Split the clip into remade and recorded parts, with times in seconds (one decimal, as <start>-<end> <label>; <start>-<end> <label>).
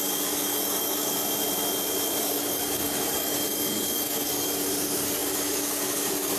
0.0-1.2 remade; 1.2-2.2 recorded; 2.2-6.4 remade